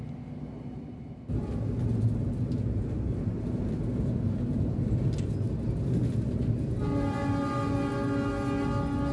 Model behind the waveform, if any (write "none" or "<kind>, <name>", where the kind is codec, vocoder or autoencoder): none